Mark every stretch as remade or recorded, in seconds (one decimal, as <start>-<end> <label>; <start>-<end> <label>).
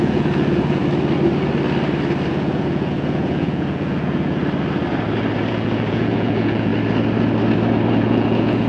0.0-0.8 remade; 0.8-2.3 recorded; 2.3-4.4 remade; 4.4-5.5 recorded; 5.5-6.7 remade; 6.7-7.9 recorded; 7.9-8.7 remade